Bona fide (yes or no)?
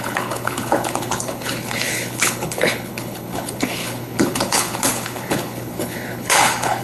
no